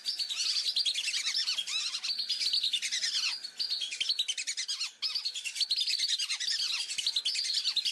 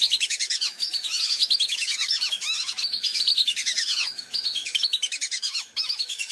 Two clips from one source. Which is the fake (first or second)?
second